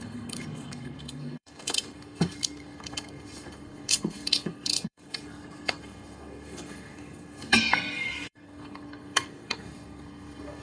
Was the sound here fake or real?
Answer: fake